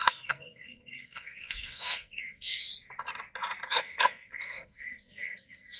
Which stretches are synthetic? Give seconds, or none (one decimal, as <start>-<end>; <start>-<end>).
0.0-2.7; 3.7-5.8